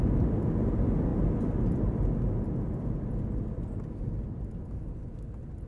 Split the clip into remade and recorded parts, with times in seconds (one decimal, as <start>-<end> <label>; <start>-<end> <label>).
0.0-5.7 recorded